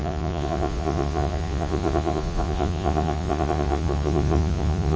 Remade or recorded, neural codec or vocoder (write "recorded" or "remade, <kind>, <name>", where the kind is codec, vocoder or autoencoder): remade, vocoder, Vocos